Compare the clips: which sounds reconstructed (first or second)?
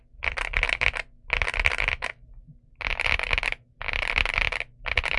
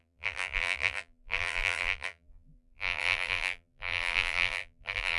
second